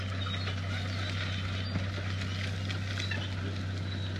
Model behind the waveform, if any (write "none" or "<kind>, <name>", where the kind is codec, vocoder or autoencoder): none